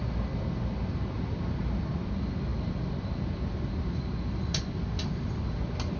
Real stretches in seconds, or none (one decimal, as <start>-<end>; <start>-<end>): 0.0-6.0